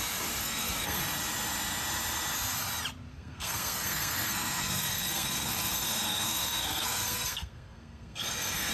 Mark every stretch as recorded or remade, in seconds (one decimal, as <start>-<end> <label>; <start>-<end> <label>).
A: 0.0-0.4 recorded; 0.4-1.0 remade; 1.0-3.1 recorded; 3.1-8.7 remade